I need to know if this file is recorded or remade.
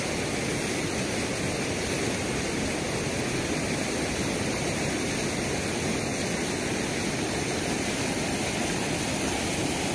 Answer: recorded